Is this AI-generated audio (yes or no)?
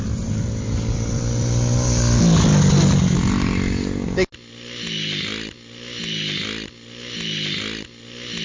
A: no